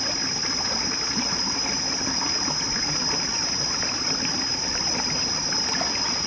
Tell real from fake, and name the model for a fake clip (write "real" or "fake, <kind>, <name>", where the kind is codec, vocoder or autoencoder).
real